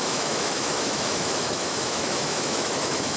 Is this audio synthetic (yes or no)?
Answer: yes